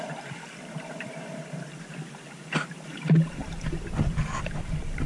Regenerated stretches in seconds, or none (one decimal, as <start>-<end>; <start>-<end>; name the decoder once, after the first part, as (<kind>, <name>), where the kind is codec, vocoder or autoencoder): 0.0-1.7 (vocoder, BigVGAN v2)